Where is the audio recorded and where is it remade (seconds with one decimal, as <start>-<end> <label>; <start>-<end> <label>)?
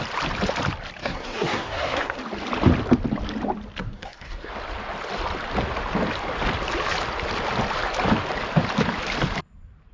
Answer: 0.0-1.0 recorded; 1.0-2.2 remade; 2.2-3.8 recorded; 3.8-4.5 remade; 4.5-9.9 recorded